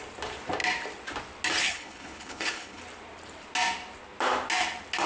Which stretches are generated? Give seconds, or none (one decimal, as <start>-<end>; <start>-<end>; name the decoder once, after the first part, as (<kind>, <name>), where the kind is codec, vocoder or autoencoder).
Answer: 1.6-2.8 (codec, HILCodec)